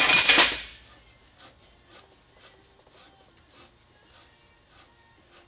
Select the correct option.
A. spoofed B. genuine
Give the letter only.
B